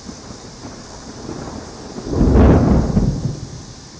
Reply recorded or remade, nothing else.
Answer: recorded